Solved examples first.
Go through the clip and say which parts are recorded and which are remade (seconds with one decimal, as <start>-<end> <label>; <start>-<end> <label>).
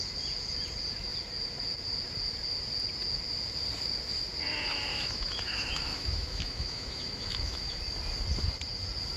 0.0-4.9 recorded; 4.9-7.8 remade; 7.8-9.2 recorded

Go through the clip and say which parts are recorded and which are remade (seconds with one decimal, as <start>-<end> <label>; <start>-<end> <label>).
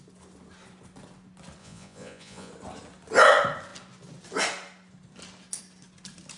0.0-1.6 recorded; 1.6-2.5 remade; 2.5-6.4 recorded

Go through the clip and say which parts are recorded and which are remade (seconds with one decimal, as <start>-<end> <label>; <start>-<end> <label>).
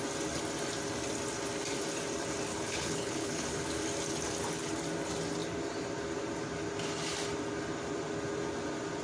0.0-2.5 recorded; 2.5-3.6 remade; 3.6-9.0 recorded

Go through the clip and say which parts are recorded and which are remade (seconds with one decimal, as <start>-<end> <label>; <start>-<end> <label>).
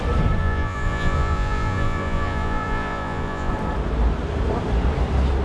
0.0-0.4 recorded; 0.4-3.5 remade; 3.5-5.4 recorded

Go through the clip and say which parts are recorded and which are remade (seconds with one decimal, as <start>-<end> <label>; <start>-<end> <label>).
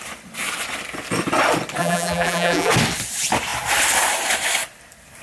0.0-1.8 recorded; 1.8-2.7 remade; 2.7-5.2 recorded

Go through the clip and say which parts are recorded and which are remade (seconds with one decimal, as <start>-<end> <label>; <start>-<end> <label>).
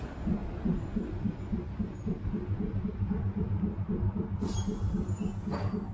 0.0-5.9 recorded